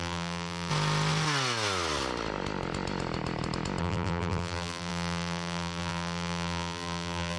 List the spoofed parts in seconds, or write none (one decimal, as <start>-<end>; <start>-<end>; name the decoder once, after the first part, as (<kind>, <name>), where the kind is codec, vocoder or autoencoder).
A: 0.0-0.7 (vocoder, BigVGAN v2); 3.8-7.4